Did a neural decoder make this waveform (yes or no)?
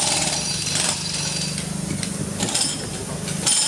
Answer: no